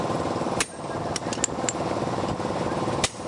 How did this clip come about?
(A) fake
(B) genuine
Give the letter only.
B